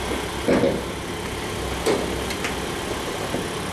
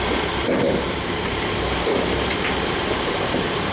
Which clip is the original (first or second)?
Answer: first